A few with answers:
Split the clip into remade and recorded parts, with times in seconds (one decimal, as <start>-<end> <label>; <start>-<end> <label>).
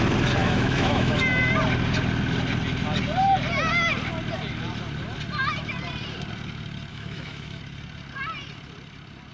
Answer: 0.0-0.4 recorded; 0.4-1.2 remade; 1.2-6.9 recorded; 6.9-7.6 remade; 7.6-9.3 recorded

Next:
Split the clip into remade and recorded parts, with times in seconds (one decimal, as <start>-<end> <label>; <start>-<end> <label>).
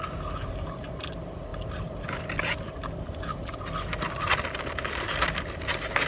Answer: 0.0-6.1 recorded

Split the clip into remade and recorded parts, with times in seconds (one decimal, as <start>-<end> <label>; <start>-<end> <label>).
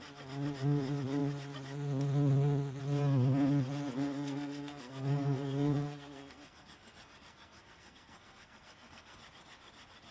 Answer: 0.0-3.9 recorded; 3.9-9.2 remade; 9.2-10.1 recorded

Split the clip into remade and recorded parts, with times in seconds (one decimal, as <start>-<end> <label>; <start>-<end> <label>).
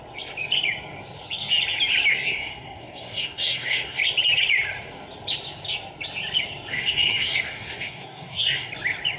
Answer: 0.0-2.1 recorded; 2.1-4.0 remade; 4.0-6.7 recorded; 6.7-8.7 remade; 8.7-9.2 recorded